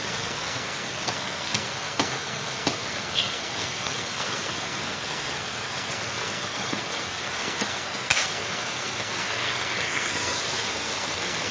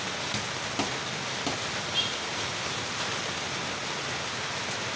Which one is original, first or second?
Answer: second